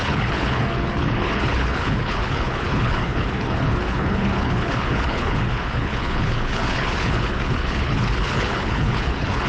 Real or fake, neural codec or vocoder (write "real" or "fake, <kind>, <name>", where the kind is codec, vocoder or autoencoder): fake, codec, HILCodec